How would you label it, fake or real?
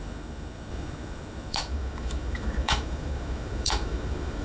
fake